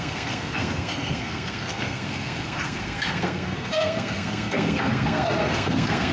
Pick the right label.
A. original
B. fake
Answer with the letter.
B